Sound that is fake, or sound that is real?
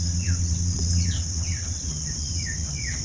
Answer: fake